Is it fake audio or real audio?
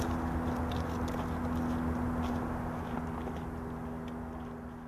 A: real